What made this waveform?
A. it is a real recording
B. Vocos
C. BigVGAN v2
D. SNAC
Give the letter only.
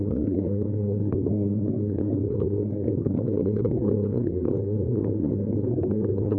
D